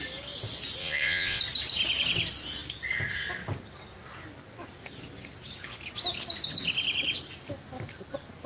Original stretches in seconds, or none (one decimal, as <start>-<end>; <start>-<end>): 0.0-0.8; 1.4-8.5